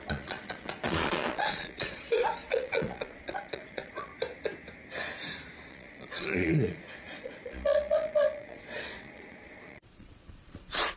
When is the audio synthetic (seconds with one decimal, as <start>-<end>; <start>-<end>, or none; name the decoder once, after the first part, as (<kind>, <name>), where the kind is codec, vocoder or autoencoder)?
0.0-4.1 (vocoder, Vocos); 5.7-11.0